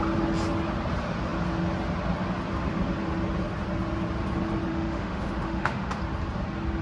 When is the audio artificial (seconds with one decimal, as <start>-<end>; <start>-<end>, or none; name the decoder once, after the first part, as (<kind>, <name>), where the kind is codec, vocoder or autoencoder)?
4.7-6.0 (autoencoder, DAC-VAE)